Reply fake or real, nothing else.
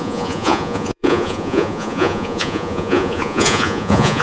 fake